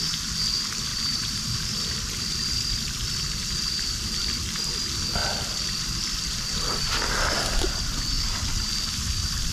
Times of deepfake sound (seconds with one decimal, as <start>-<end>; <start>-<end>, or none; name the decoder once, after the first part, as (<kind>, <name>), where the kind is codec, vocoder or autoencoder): 0.9-1.8 (vocoder, BigVGAN v2)